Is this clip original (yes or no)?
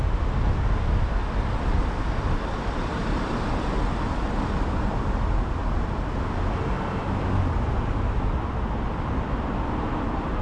yes